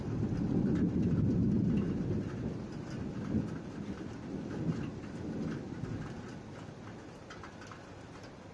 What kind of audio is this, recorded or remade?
recorded